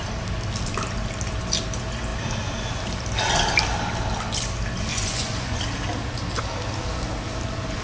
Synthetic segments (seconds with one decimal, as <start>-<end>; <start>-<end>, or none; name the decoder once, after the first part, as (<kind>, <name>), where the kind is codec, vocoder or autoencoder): 4.9-5.6 (vocoder, Vocos)